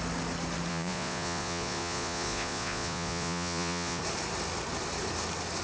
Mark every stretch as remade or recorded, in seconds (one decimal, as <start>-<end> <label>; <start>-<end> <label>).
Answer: 0.0-0.7 recorded; 0.7-4.0 remade; 4.0-5.6 recorded